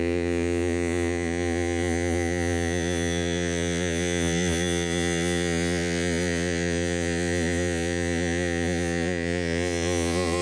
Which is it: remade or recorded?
remade